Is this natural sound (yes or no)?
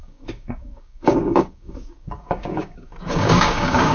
no